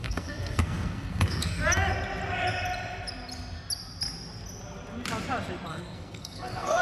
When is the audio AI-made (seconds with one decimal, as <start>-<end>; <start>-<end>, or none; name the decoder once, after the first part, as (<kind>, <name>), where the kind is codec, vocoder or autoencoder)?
0.0-1.6 (codec, SNAC); 5.7-6.8